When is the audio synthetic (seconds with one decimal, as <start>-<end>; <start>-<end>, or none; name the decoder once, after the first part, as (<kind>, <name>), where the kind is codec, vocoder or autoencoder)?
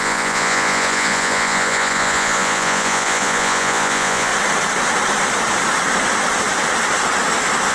0.0-4.3 (vocoder, Vocos)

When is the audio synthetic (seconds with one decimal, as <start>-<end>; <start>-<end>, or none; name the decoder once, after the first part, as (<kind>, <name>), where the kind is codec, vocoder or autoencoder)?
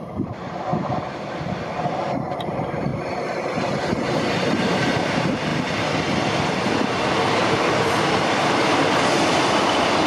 0.0-0.7 (vocoder, BigVGAN v2); 1.7-2.9; 4.1-7.4; 7.9-10.1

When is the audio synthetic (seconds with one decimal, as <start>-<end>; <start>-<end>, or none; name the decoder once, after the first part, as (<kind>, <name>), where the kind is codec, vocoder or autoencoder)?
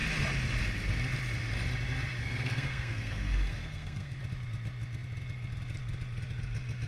2.2-4.2 (codec, SNAC)